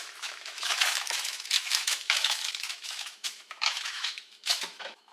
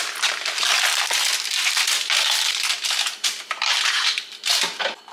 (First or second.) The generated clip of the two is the first